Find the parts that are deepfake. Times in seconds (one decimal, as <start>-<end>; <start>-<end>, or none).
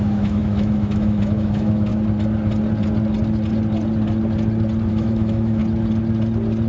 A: 0.0-1.9; 4.9-5.6